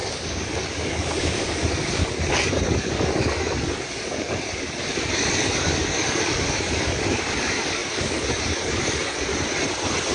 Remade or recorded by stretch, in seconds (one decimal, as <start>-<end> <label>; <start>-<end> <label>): 0.0-9.3 remade; 9.3-10.1 recorded

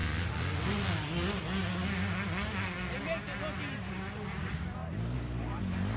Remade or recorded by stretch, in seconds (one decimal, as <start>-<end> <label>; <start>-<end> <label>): 0.0-6.0 recorded

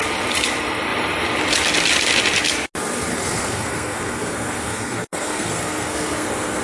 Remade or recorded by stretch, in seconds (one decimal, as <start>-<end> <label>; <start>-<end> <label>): 0.0-3.1 recorded; 3.1-6.6 remade

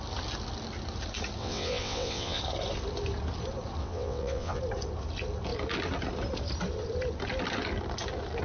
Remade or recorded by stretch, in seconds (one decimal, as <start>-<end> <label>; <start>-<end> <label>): 0.0-1.4 recorded; 1.4-2.4 remade; 2.4-3.8 recorded; 3.8-4.6 remade; 4.6-8.4 recorded

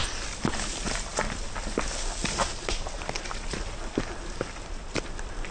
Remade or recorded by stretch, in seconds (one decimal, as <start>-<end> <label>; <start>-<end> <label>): 0.0-5.5 recorded

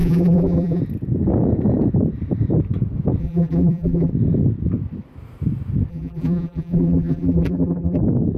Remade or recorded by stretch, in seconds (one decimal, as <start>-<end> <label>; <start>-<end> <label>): 0.0-0.8 remade; 0.8-3.2 recorded; 3.2-4.1 remade; 4.1-5.9 recorded; 5.9-8.0 remade; 8.0-8.4 recorded

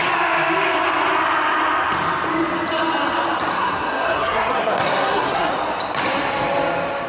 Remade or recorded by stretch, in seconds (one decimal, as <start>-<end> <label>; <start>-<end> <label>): 0.0-3.5 recorded; 3.5-5.5 remade; 5.5-7.1 recorded

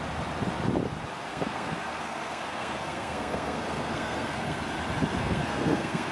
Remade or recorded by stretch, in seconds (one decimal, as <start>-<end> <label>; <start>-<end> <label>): 0.0-1.3 recorded; 1.3-4.6 remade; 4.6-5.2 recorded; 5.2-6.1 remade